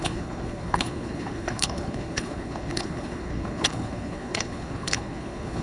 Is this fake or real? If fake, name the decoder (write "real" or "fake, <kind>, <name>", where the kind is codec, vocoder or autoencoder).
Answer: fake, codec, HILCodec